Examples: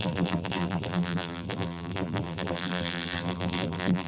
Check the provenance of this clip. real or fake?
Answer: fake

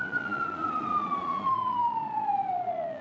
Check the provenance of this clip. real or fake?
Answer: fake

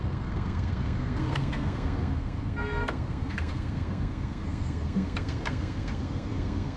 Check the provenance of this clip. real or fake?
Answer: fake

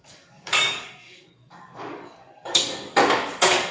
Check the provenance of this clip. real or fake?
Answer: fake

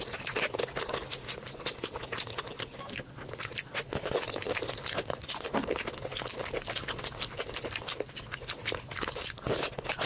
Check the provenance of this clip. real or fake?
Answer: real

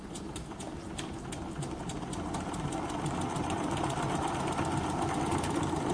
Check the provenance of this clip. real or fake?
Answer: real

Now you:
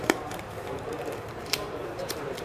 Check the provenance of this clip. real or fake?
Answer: fake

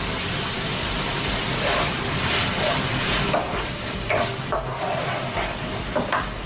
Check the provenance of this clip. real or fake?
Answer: real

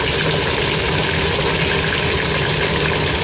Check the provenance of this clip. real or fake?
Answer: real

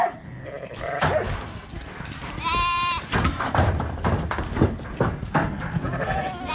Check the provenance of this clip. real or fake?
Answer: real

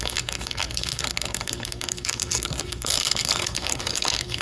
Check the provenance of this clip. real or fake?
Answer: fake